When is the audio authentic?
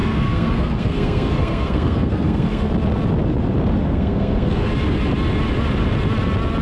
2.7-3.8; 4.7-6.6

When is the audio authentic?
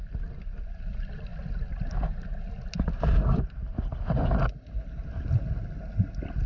0.0-6.5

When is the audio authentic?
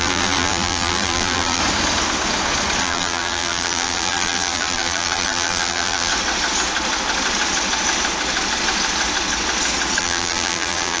1.6-2.8; 6.1-10.0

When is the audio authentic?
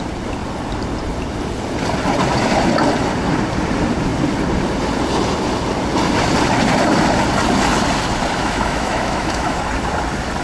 0.0-8.4; 9.6-10.4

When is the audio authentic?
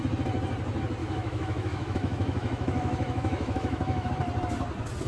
0.0-1.0; 4.1-5.1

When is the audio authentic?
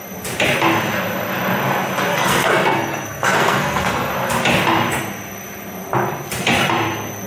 0.0-2.1; 4.1-7.3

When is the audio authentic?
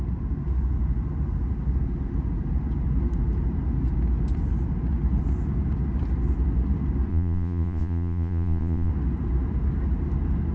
0.0-7.1; 8.9-10.5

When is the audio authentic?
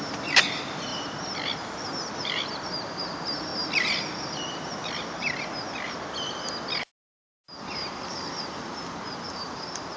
0.9-2.2; 3.5-7.6